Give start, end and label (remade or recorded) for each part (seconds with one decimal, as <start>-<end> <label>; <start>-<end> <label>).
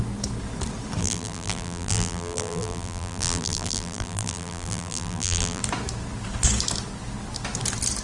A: 0.0-1.0 recorded; 1.0-5.6 remade; 5.6-8.0 recorded